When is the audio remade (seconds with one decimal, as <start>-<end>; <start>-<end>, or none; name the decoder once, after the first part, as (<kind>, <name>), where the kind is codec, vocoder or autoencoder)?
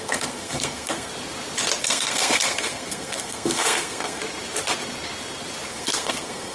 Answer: 0.0-1.1 (codec, SNAC); 1.8-4.2; 5.7-6.5